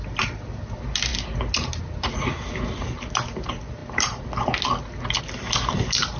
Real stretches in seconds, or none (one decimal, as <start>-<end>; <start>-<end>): 0.0-6.2